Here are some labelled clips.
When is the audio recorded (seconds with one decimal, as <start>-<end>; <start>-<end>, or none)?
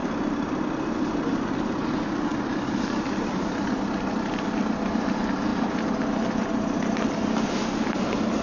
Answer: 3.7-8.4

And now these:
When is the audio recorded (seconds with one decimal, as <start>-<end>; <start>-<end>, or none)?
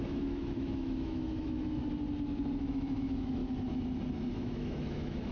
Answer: 1.8-2.7; 3.4-4.3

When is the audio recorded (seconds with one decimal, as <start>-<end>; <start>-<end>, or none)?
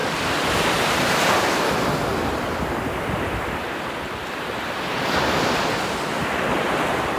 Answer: 1.6-2.1; 5.6-7.2